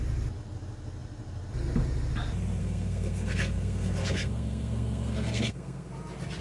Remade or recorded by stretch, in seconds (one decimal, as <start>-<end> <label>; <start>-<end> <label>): 0.0-2.6 recorded; 2.6-5.9 remade; 5.9-6.4 recorded